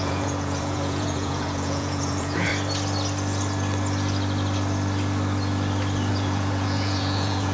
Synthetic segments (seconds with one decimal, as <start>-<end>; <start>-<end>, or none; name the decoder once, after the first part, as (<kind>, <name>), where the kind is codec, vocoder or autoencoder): 0.0-2.5 (vocoder, Vocos); 6.1-7.5